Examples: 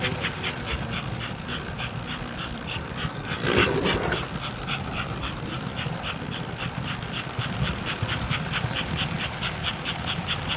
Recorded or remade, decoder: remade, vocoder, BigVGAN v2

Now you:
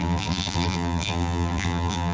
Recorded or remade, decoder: remade, vocoder, BigVGAN v2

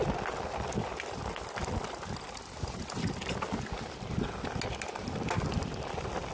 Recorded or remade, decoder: recorded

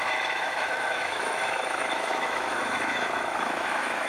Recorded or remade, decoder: remade, autoencoder, DAC-VAE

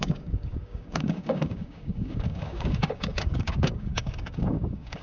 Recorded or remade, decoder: remade, codec, DAC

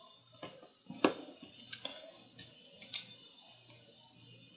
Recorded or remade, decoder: recorded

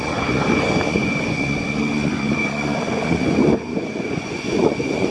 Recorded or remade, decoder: remade, vocoder, Vocos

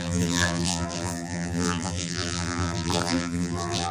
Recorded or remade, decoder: remade, vocoder, BigVGAN v2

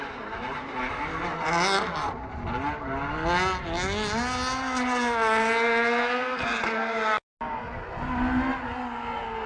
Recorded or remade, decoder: recorded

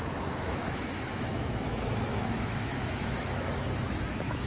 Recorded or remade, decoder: remade, autoencoder, DAC-VAE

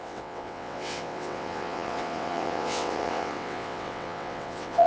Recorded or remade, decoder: remade, vocoder, WaveNeXt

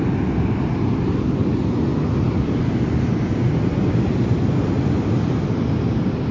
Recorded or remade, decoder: recorded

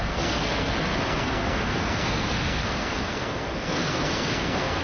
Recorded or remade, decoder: remade, codec, SNAC